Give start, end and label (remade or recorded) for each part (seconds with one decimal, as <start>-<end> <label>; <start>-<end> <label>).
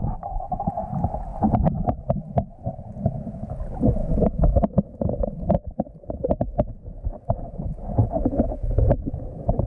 0.0-4.0 recorded; 4.0-5.1 remade; 5.1-9.7 recorded